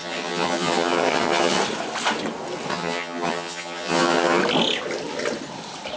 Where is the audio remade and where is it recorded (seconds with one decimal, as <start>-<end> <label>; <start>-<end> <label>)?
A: 0.0-1.6 remade; 1.6-2.7 recorded; 2.7-4.4 remade; 4.4-6.0 recorded